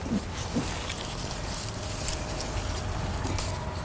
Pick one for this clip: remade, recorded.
recorded